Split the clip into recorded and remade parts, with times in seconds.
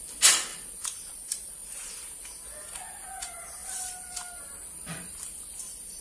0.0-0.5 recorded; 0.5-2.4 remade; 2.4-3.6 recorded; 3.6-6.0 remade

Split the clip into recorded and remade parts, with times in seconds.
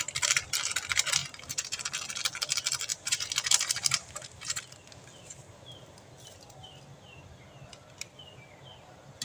0.0-1.2 recorded; 1.2-1.8 remade; 1.8-2.9 recorded; 2.9-4.6 remade; 4.6-9.2 recorded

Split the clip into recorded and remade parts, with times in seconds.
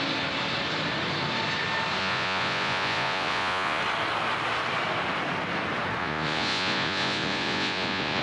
0.0-2.0 recorded; 2.0-3.8 remade; 3.8-6.0 recorded; 6.0-8.2 remade